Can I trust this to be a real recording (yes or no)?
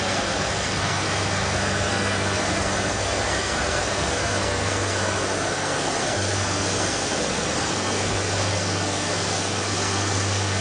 no